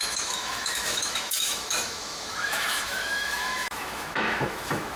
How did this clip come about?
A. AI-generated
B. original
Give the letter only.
A